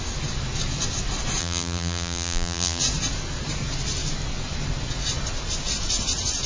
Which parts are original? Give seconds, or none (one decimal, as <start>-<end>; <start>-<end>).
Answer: 0.0-1.4; 2.8-6.5